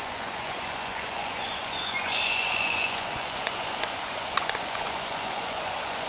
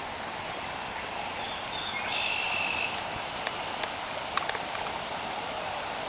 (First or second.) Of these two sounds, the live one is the second